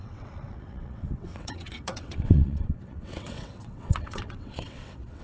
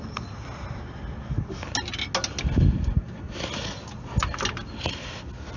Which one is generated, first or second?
first